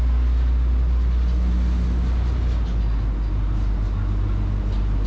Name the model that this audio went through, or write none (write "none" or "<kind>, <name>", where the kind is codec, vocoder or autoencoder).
none